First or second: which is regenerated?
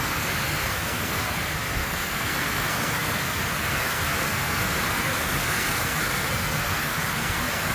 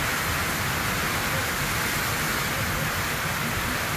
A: first